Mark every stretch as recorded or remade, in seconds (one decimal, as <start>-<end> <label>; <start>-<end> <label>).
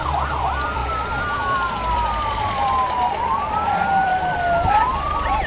0.0-5.5 remade